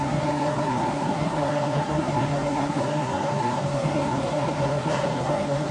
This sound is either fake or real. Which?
fake